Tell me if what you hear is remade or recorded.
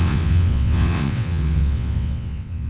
remade